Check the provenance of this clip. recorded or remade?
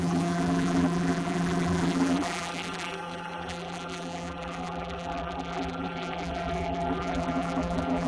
remade